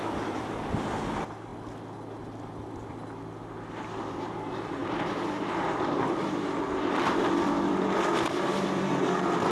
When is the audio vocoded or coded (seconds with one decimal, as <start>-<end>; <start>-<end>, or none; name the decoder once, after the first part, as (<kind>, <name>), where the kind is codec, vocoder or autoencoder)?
0.0-1.5 (vocoder, BigVGAN v2); 3.7-9.5